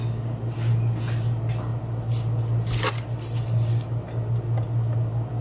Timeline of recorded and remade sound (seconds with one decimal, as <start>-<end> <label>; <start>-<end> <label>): 0.0-5.4 recorded